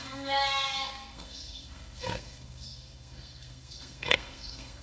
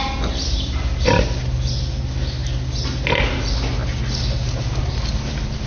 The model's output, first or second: first